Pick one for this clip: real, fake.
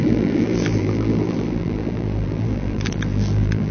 fake